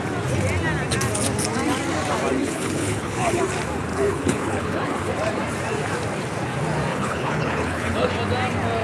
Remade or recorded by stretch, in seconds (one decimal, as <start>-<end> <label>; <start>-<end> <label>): 0.0-2.4 recorded; 2.4-3.4 remade; 3.4-3.9 recorded; 3.9-5.1 remade; 5.1-6.9 recorded; 6.9-8.1 remade; 8.1-8.8 recorded